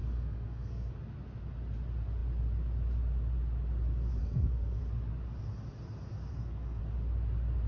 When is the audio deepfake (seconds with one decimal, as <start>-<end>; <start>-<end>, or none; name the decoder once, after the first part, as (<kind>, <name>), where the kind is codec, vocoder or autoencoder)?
0.0-0.9 (codec, SNAC); 4.2-4.8; 6.3-6.8